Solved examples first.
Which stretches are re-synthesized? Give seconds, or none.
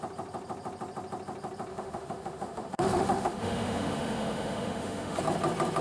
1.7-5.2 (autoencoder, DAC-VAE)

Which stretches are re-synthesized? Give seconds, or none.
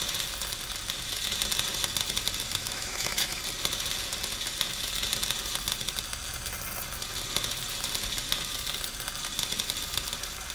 2.6-3.4 (autoencoder, DAC-VAE)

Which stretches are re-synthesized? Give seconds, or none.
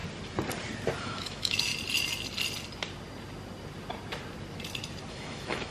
1.0-1.7 (autoencoder, DAC-VAE); 5.1-5.7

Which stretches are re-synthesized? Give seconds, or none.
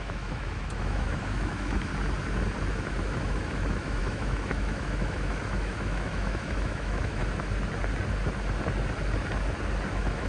0.0-1.9 (autoencoder, DAC-VAE); 2.7-7.2; 9.9-10.3